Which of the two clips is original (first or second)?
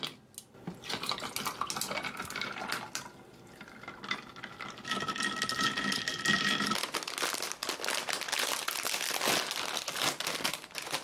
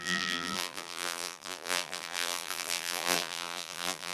first